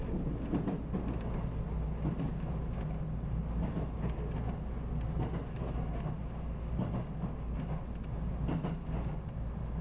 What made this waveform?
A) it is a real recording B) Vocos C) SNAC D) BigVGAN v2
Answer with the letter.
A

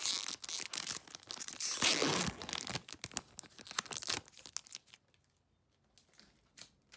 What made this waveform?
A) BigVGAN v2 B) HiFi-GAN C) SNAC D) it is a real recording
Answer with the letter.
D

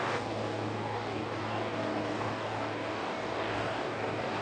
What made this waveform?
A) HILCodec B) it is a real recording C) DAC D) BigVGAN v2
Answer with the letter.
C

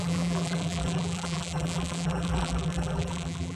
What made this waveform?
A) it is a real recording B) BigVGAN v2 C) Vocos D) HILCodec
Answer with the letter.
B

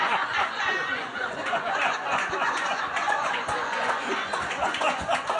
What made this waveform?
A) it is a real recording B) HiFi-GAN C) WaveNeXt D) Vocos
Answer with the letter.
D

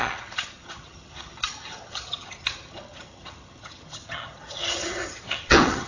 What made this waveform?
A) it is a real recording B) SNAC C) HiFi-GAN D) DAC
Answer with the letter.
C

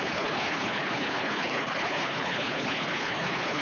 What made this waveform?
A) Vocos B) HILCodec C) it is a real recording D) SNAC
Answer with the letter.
B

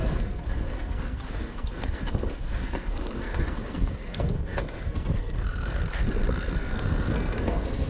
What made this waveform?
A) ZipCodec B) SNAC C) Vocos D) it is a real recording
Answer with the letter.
B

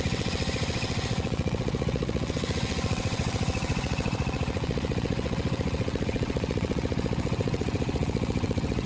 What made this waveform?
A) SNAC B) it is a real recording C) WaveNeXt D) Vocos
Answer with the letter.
C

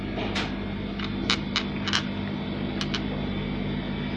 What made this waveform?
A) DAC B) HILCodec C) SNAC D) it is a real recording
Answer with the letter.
D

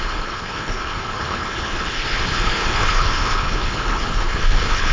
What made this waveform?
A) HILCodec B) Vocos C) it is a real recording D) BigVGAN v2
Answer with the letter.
A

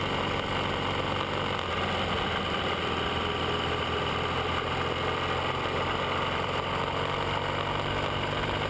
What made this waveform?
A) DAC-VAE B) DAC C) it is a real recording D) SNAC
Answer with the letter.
C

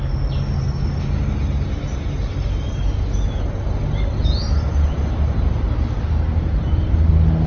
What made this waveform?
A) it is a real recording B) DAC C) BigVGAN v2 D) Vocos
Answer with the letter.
A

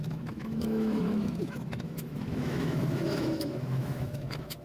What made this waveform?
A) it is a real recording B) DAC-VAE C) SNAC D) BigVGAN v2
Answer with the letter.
B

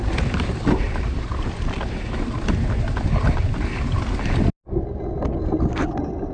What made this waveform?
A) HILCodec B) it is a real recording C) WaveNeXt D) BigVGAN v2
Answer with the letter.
B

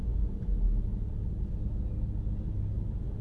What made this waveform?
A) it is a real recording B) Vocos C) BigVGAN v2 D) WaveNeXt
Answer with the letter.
A